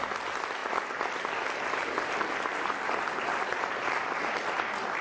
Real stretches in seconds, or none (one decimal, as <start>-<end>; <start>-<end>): 0.0-5.0